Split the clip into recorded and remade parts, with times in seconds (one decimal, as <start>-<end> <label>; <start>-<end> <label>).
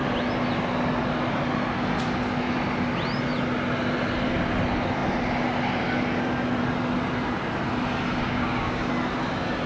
0.0-8.2 recorded; 8.2-8.9 remade; 8.9-9.7 recorded